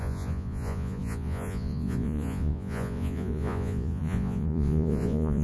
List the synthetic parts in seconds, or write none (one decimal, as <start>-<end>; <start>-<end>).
0.0-5.4